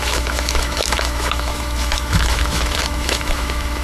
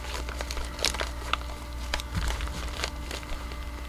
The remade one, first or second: first